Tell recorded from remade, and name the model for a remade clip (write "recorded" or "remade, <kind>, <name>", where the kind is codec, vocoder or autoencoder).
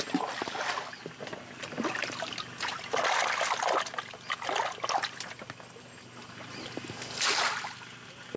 recorded